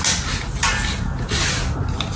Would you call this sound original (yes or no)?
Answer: yes